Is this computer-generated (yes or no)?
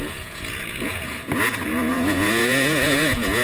yes